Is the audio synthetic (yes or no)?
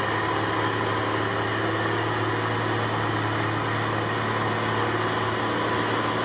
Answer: no